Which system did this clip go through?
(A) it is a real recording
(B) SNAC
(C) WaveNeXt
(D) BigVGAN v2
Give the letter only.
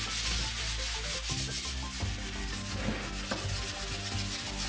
A